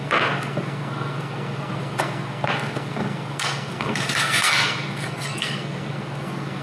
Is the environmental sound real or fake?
fake